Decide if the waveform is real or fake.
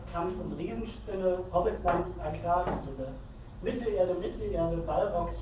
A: fake